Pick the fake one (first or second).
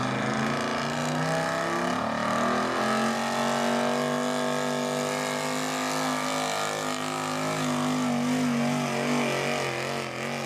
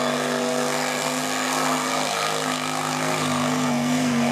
second